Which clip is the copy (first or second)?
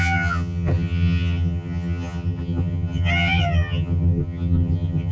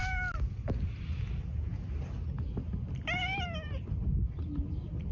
first